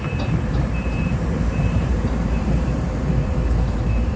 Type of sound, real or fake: fake